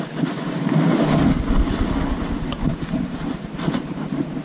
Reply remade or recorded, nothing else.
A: recorded